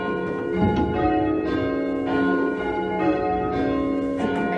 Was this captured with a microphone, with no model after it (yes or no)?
yes